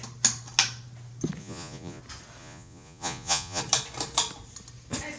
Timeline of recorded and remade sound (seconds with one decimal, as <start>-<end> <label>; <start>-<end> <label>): 0.0-1.4 recorded; 1.4-2.0 remade; 2.0-2.4 recorded; 2.4-3.6 remade; 3.6-5.2 recorded